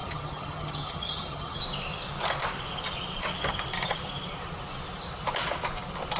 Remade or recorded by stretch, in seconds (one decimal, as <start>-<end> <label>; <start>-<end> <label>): 0.0-1.6 remade; 1.6-6.2 recorded